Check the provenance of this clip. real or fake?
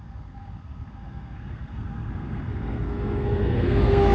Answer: fake